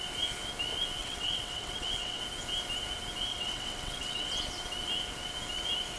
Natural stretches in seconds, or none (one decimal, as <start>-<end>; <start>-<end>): 0.0-1.0; 2.2-3.3; 4.3-6.0